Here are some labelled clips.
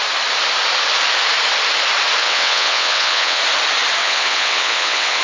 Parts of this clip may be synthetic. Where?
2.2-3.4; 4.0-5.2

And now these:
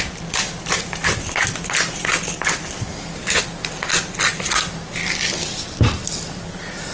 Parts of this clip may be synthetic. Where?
none

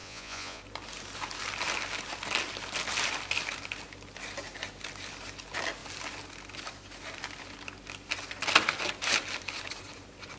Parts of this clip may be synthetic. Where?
0.0-0.6

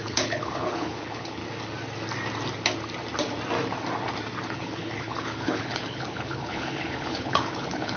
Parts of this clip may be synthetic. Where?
0.0-1.4; 4.5-8.0

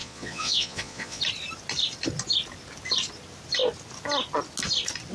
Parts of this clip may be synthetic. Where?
0.0-1.2

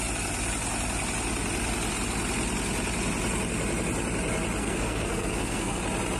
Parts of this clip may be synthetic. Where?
4.6-5.8